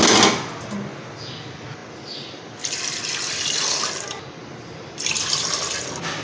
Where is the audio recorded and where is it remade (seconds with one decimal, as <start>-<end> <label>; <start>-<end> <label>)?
0.0-6.2 recorded